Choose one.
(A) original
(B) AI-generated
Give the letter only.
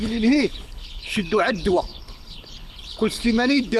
B